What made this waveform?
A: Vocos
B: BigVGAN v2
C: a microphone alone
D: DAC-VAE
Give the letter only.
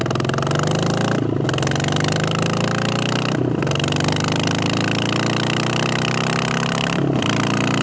C